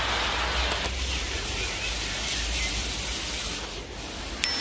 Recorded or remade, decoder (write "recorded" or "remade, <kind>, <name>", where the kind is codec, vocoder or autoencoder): recorded